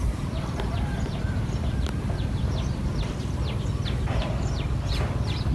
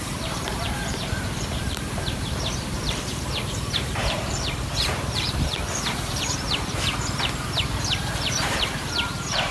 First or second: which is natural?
first